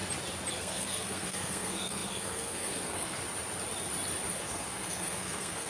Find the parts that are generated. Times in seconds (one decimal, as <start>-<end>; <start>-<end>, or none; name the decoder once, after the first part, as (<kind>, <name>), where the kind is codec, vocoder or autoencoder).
0.5-3.2 (codec, SNAC); 4.3-5.7